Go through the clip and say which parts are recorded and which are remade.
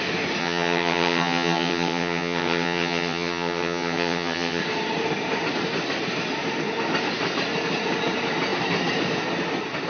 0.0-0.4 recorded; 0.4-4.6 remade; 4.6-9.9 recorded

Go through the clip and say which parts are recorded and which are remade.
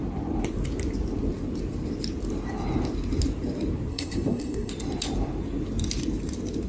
0.0-3.9 recorded; 3.9-4.7 remade; 4.7-6.7 recorded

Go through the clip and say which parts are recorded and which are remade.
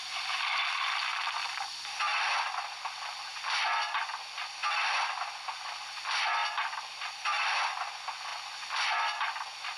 0.0-9.8 recorded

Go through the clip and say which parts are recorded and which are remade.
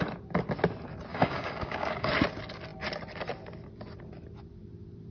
0.0-1.1 recorded; 1.1-2.1 remade; 2.1-5.1 recorded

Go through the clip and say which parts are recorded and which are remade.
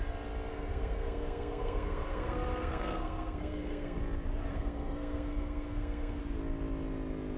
0.0-0.5 recorded; 0.5-4.0 remade; 4.0-4.5 recorded; 4.5-6.2 remade; 6.2-7.4 recorded